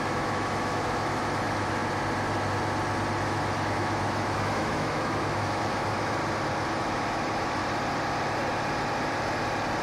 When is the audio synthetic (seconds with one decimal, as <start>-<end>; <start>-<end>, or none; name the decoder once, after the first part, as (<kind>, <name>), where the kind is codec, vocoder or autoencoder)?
0.0-1.8 (autoencoder, DAC-VAE); 3.2-6.2; 6.8-7.6